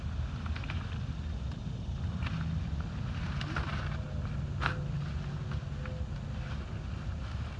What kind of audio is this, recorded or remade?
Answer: recorded